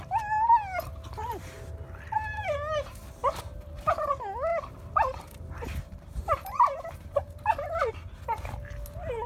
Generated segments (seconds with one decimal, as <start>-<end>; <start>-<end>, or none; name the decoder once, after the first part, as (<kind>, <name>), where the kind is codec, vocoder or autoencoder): 3.2-3.9 (vocoder, BigVGAN v2); 4.5-7.9